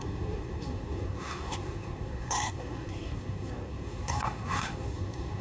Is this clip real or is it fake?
fake